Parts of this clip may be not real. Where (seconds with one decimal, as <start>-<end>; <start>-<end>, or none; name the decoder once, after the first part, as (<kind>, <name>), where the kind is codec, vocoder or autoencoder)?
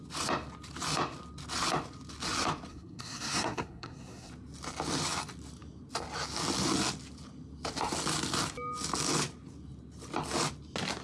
2.7-4.3 (codec, SNAC)